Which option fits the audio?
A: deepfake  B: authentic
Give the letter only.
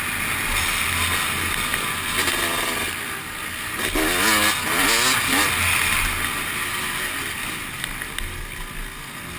B